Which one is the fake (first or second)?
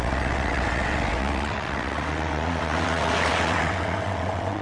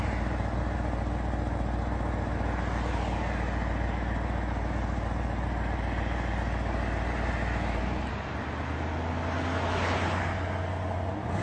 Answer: first